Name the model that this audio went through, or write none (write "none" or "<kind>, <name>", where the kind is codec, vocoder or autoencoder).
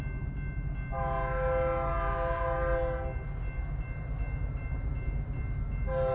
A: none